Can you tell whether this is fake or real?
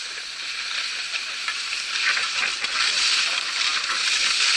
real